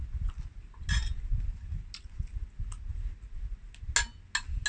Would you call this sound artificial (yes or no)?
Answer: no